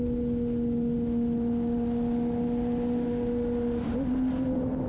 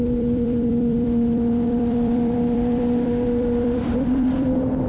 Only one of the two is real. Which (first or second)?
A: first